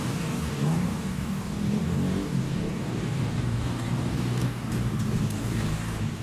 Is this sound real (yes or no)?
no